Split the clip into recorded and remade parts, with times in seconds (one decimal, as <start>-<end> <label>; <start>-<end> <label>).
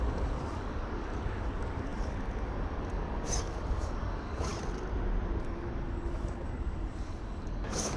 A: 0.0-4.5 remade; 4.5-5.4 recorded; 5.4-8.0 remade